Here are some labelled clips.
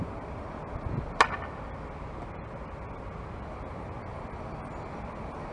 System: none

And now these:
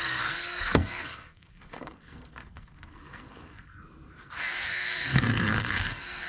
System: codec, SNAC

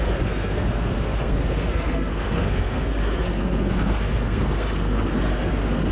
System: codec, SNAC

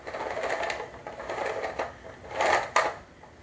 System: none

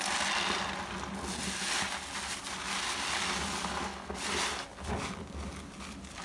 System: none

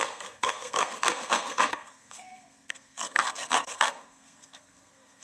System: codec, SNAC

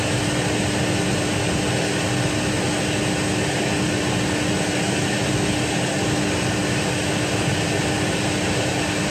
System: none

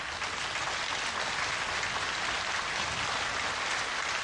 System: none